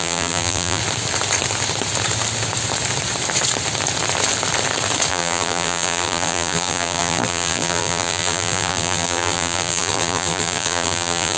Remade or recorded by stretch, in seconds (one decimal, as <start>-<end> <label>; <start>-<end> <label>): 0.0-0.8 remade; 0.8-5.1 recorded; 5.1-11.4 remade